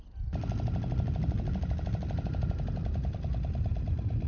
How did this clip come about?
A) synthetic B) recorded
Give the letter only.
B